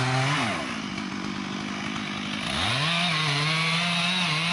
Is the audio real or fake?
real